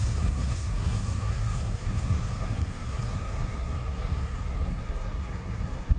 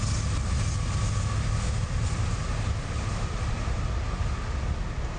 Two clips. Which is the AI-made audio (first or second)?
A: first